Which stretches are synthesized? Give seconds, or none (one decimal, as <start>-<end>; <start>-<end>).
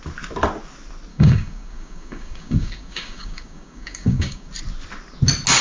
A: 1.1-4.5